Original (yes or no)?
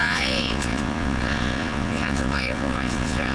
no